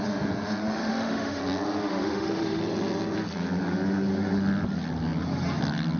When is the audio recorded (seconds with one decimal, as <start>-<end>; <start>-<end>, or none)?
0.0-0.8; 1.4-1.8; 2.6-6.0